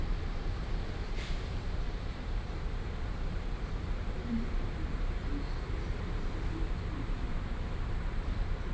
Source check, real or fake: fake